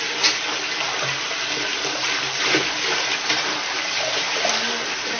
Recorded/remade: recorded